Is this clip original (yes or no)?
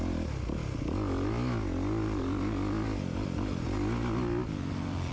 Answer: yes